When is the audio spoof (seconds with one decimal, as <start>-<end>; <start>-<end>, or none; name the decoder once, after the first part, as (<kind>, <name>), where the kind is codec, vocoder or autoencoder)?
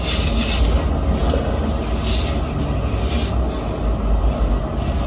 none